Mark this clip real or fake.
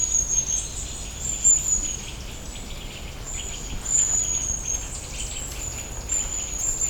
real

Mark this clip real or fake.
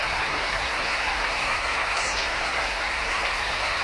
fake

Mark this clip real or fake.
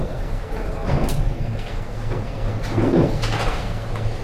fake